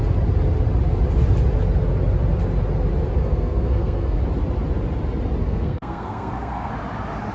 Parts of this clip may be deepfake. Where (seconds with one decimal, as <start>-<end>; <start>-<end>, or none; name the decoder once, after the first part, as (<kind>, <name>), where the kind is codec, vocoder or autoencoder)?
3.2-4.2 (codec, SNAC); 5.4-6.7